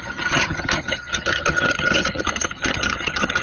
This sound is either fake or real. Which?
fake